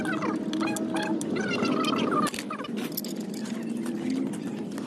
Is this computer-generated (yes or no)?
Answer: no